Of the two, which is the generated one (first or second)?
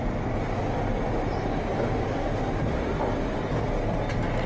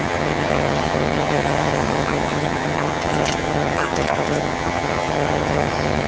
second